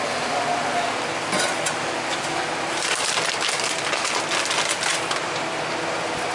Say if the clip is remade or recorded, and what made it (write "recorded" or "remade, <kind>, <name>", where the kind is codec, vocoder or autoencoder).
recorded